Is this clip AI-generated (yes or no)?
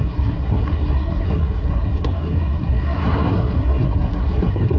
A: yes